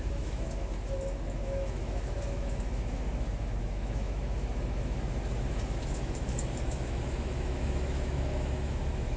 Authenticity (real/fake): fake